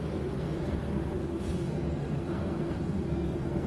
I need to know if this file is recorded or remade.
remade